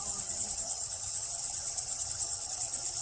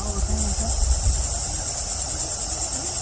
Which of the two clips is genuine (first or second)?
second